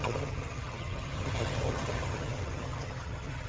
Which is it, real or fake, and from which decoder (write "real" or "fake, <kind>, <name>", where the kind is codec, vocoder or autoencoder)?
fake, vocoder, HiFi-GAN